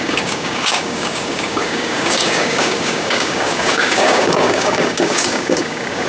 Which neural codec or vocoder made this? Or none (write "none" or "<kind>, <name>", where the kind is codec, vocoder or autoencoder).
codec, DAC